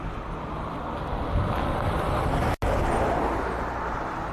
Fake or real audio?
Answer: real